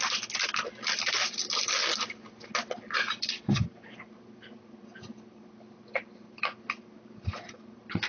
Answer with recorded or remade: recorded